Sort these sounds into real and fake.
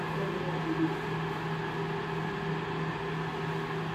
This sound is real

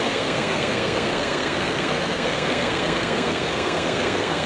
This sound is fake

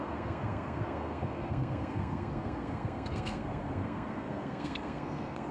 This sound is fake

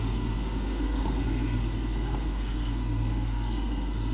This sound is fake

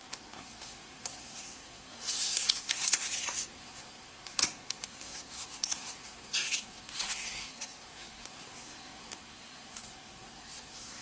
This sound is fake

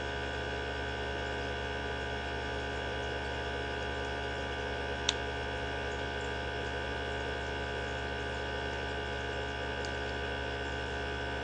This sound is real